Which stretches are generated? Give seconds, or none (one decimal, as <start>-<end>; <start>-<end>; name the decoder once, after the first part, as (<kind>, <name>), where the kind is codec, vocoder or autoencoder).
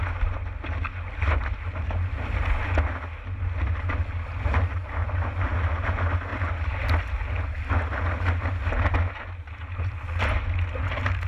none